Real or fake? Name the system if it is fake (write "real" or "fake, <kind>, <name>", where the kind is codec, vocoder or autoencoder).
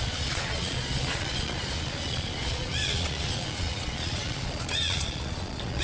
fake, vocoder, Vocos